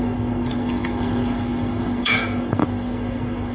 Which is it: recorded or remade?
remade